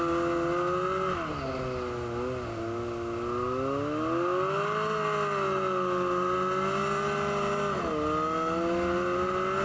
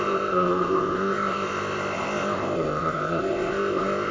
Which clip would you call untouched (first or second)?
first